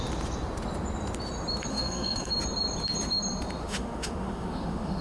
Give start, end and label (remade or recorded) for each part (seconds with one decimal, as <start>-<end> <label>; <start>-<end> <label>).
0.0-1.7 recorded; 1.7-2.3 remade; 2.3-3.6 recorded; 3.6-5.0 remade